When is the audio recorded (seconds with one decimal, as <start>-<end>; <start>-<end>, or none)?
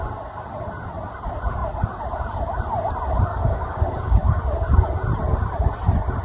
0.0-3.3; 4.4-6.2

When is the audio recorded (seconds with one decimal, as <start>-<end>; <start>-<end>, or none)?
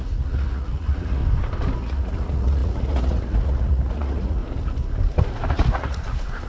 1.2-1.8; 4.4-5.5